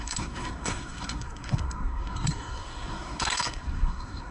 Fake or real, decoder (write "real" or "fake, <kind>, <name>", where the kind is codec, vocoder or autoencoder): fake, codec, SNAC